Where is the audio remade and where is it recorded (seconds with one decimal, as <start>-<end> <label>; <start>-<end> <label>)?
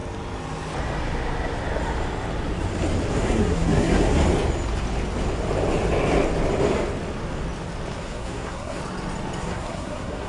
0.0-3.1 recorded; 3.1-4.2 remade; 4.2-8.0 recorded; 8.0-8.8 remade; 8.8-9.4 recorded; 9.4-10.3 remade